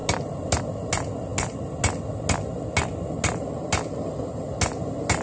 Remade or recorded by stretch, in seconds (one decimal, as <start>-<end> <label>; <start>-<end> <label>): 0.0-5.2 recorded